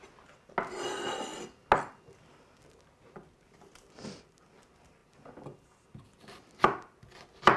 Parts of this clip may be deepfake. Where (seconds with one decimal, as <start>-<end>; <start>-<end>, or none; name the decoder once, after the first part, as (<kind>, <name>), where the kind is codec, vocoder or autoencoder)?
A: none